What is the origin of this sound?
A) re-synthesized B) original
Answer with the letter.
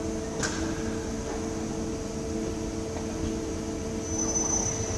B